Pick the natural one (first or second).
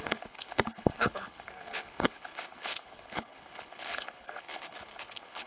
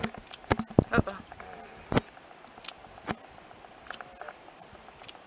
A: second